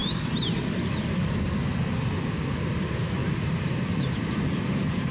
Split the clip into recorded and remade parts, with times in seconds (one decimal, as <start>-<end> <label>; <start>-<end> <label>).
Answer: 0.0-3.2 recorded; 3.2-5.1 remade